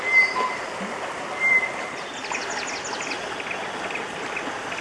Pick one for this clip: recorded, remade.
recorded